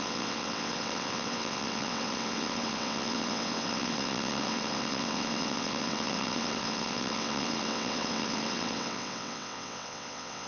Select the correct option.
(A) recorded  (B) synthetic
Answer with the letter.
B